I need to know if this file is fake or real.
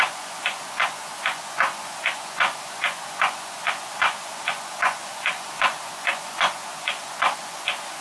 fake